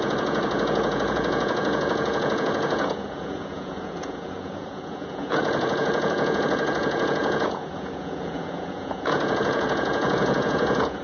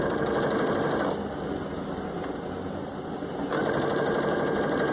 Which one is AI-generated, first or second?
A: first